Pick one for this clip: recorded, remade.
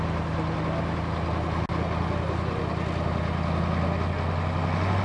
recorded